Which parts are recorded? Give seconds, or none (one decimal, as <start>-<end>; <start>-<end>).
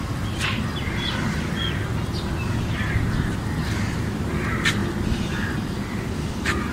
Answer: 1.9-2.6